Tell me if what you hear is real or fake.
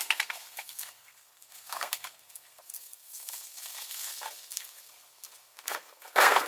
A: fake